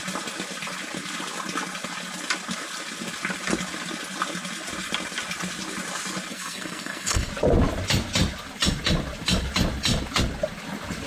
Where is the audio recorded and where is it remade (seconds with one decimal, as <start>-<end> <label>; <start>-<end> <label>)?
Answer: 0.0-6.3 recorded; 6.3-7.3 remade; 7.3-11.1 recorded